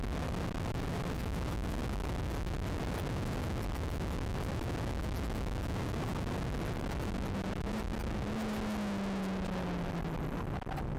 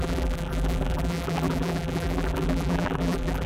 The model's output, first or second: second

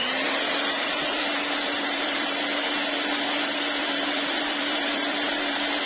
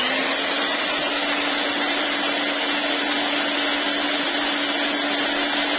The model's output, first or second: first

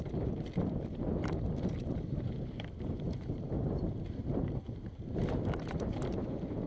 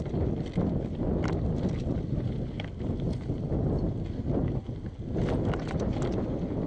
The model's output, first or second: first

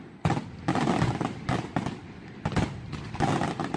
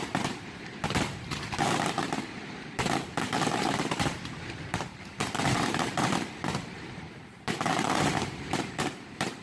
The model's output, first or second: second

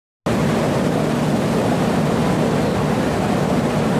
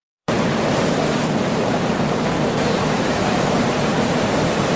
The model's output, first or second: second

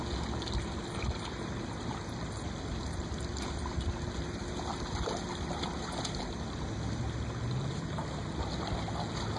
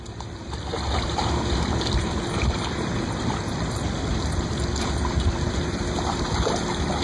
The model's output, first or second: second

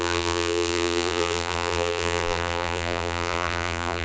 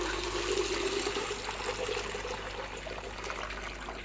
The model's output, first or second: first